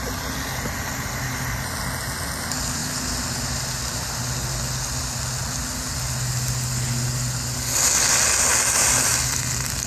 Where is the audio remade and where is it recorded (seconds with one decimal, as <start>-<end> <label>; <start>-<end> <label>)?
0.0-9.1 recorded; 9.1-9.9 remade